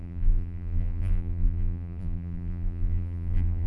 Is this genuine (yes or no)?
no